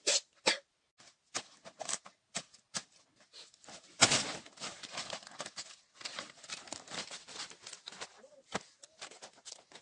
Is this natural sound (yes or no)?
yes